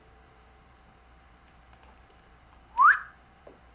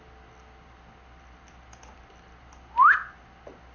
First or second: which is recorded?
second